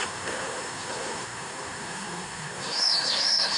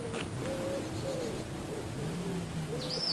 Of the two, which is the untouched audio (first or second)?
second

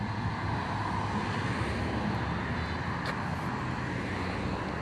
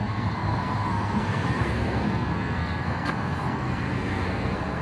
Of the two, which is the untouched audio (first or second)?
first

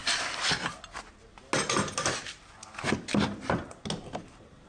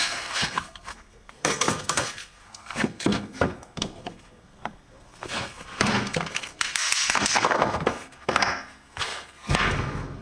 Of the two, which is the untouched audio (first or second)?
first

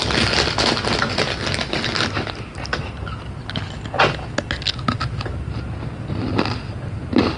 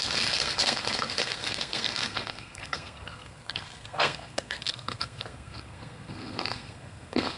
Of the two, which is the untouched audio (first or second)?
first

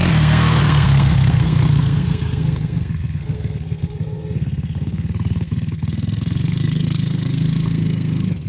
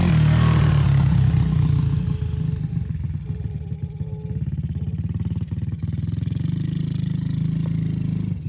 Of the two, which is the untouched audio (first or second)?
second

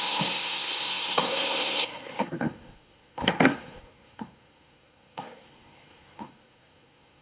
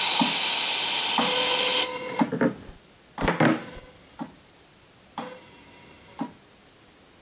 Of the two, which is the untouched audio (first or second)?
second